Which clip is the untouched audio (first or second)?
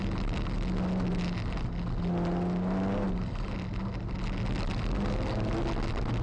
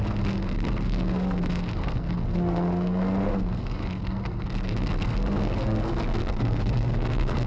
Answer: first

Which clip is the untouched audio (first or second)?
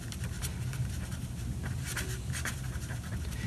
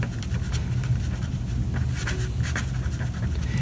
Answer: second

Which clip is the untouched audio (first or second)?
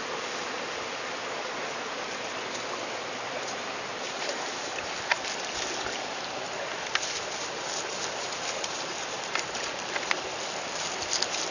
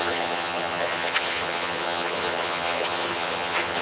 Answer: first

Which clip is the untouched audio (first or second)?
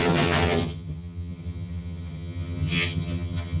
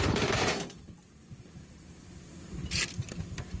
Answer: second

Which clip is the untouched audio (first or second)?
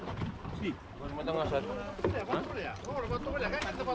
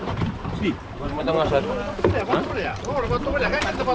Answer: first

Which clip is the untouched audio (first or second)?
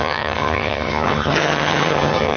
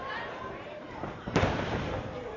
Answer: second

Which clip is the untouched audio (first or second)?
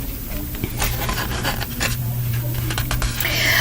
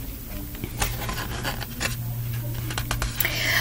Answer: second